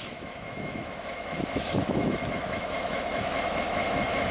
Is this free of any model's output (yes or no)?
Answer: no